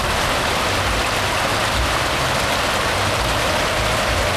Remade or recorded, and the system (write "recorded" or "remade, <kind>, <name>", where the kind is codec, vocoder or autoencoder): recorded